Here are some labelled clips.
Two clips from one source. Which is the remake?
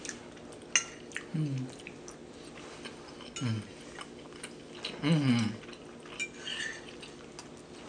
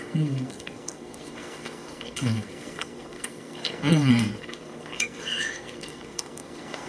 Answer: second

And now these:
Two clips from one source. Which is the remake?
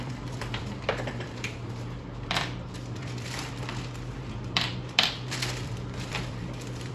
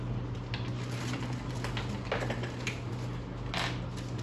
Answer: first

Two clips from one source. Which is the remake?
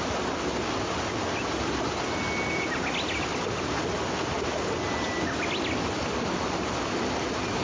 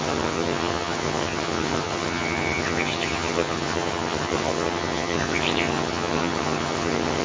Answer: second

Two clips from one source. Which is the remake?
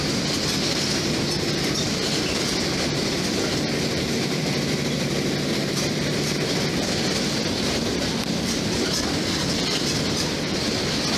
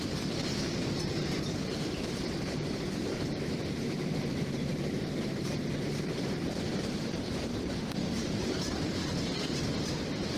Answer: second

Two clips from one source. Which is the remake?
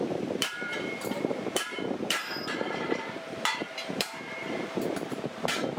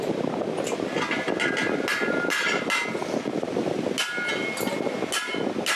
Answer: first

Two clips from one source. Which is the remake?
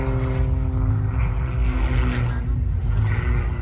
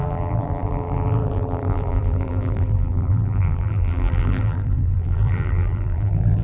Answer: second